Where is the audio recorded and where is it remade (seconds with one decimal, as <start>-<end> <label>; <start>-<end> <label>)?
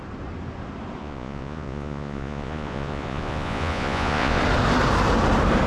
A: 0.0-1.0 recorded; 1.0-4.4 remade; 4.4-5.7 recorded